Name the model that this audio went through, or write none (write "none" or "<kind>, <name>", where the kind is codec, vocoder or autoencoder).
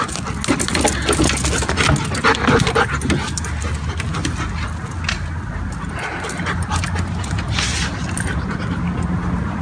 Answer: none